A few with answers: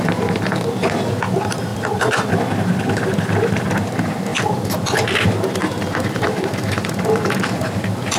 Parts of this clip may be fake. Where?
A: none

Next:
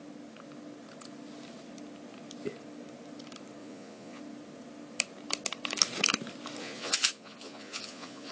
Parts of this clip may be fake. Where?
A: 3.6-4.2 (vocoder, Vocos); 6.6-8.3

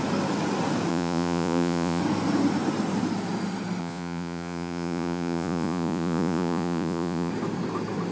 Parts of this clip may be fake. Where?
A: 0.9-2.0 (vocoder, Vocos); 3.8-7.3

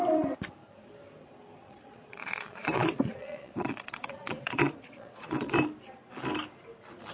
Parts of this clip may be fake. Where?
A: 1.6-5.5 (vocoder, Vocos)

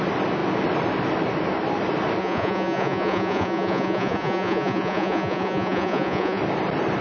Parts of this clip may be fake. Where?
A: 2.2-6.4 (vocoder, Vocos)